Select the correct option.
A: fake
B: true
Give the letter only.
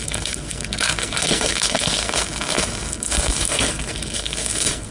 A